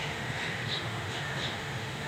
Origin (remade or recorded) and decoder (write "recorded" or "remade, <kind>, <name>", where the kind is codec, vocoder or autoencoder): remade, autoencoder, DAC-VAE